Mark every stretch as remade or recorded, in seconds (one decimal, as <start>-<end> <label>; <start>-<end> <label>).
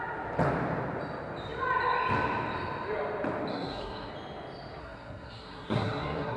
0.0-3.5 recorded; 3.5-4.1 remade; 4.1-4.8 recorded; 4.8-6.4 remade